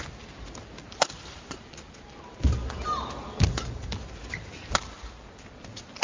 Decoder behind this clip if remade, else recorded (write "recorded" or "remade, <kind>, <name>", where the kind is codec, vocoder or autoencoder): recorded